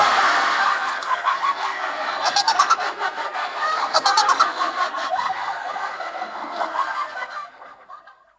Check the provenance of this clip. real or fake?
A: fake